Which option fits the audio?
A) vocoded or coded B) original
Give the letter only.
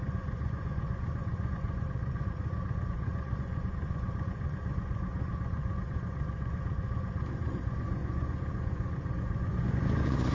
A